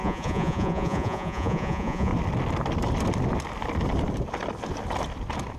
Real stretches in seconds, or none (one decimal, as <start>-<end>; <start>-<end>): 2.1-5.6